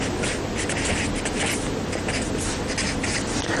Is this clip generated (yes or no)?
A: no